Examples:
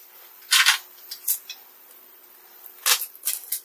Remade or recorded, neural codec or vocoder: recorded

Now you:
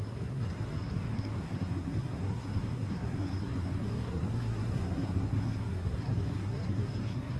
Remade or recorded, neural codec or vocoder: remade, codec, SNAC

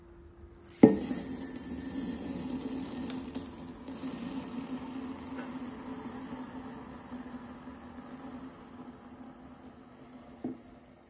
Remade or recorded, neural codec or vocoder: recorded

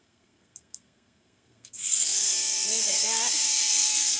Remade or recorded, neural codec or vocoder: remade, codec, SNAC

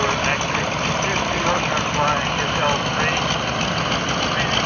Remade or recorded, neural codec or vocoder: recorded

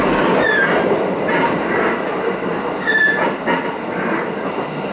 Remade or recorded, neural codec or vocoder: recorded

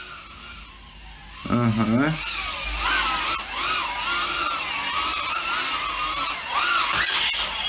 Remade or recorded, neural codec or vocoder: recorded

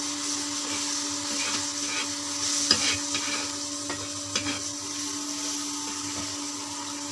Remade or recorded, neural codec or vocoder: recorded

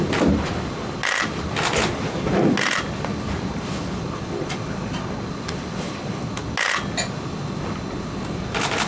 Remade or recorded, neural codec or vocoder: recorded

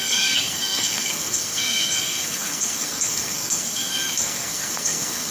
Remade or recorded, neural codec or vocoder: remade, codec, SNAC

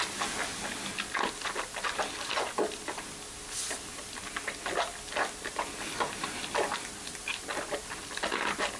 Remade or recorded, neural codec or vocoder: recorded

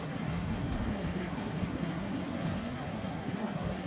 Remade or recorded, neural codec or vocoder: remade, codec, SNAC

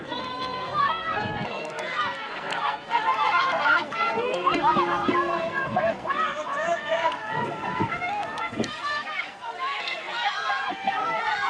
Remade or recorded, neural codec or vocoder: remade, codec, SNAC